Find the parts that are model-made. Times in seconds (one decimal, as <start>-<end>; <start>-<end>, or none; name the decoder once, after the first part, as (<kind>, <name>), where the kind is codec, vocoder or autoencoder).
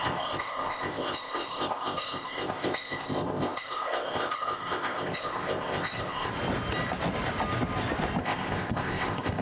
0.0-6.3 (codec, ZipCodec); 8.2-9.4